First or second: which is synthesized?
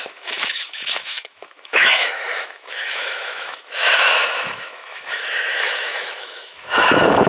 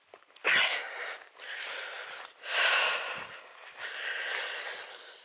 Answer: first